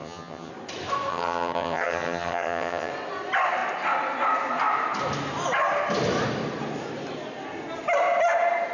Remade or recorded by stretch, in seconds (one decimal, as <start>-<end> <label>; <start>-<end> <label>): 0.0-0.5 remade; 0.5-1.1 recorded; 1.1-2.9 remade; 2.9-8.7 recorded